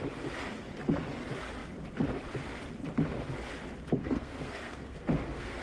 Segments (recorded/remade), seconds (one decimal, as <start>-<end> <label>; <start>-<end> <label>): 0.0-4.0 recorded; 4.0-5.6 remade